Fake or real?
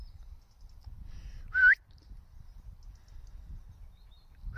real